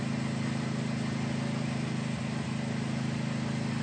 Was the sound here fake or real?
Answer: real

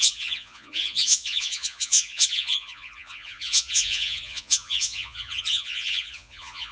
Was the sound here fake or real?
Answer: fake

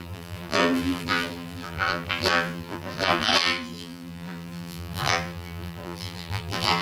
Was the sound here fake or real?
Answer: fake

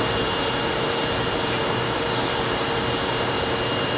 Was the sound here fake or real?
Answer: fake